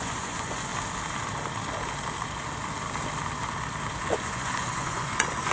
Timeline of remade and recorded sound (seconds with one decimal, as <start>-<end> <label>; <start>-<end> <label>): 0.0-0.7 remade; 0.7-4.0 recorded; 4.0-5.5 remade